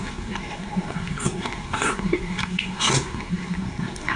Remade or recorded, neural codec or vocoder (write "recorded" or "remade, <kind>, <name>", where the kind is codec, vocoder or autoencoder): remade, codec, SNAC